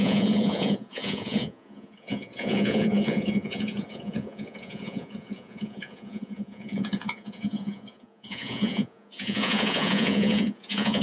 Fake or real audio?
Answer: fake